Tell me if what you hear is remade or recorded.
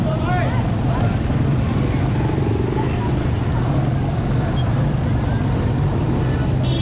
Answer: recorded